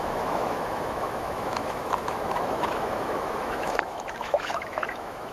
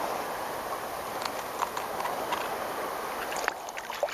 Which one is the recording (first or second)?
second